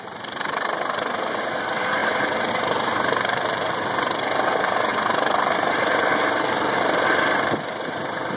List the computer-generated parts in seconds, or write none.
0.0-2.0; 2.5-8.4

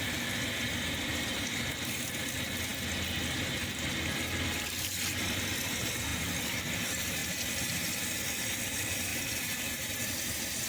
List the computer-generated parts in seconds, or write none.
none

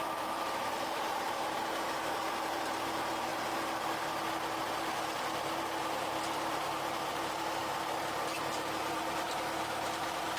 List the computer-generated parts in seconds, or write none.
0.0-3.3; 4.6-7.6; 8.4-10.4